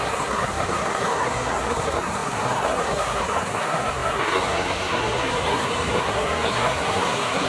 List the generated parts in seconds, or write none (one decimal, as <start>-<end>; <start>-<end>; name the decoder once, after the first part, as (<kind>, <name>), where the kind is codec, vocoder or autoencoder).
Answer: 0.0-7.5 (codec, SNAC)